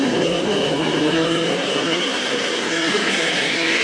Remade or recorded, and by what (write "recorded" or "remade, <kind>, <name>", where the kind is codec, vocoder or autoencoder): remade, codec, SNAC